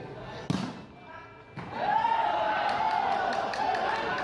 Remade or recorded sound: recorded